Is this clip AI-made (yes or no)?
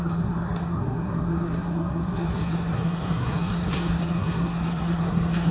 yes